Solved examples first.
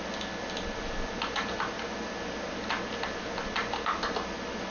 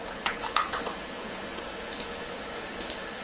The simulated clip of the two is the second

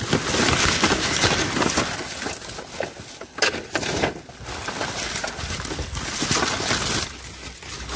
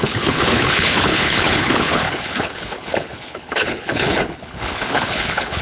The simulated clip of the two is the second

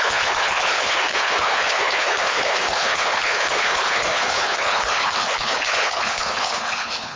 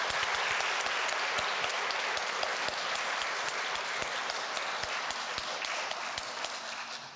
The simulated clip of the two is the first